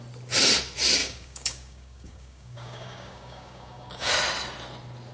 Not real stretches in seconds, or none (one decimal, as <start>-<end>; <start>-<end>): 1.0-4.1